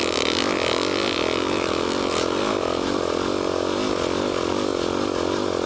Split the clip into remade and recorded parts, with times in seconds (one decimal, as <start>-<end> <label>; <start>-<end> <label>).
0.0-5.7 recorded